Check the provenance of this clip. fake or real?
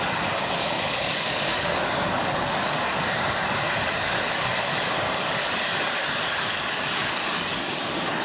fake